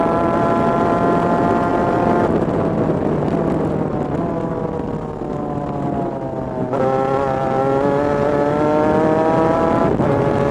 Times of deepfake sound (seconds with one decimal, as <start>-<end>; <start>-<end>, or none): none